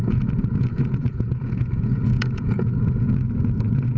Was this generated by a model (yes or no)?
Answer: yes